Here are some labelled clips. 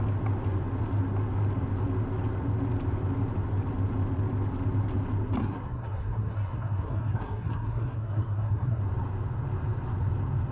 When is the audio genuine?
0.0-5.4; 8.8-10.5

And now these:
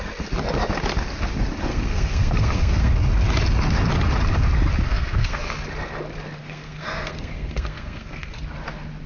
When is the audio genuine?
0.0-1.7; 2.9-4.8; 5.4-6.4; 8.4-9.1

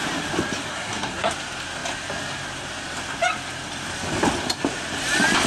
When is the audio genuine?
0.0-0.7; 1.3-5.5

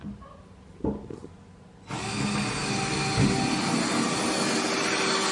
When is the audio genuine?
0.0-5.3

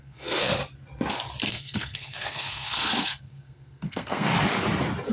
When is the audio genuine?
0.6-1.5; 4.3-5.1

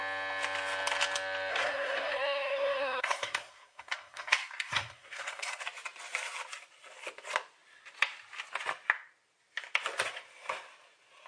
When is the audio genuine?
0.0-1.5; 5.6-11.3

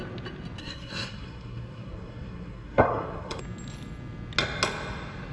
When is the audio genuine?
0.0-0.6; 3.4-5.3

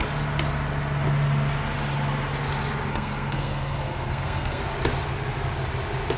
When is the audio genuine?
0.0-2.9; 4.6-6.2